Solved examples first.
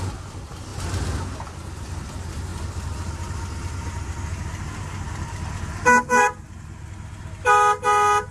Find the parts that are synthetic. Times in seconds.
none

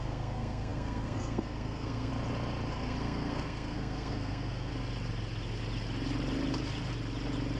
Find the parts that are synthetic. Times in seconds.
0.0-2.1 (codec, SNAC); 2.7-4.7

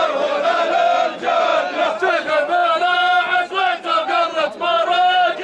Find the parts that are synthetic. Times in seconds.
none

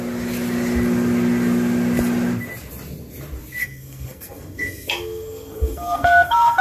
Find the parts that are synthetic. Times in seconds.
3.6-6.6 (codec, SNAC)